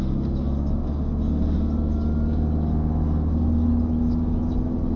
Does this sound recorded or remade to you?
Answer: recorded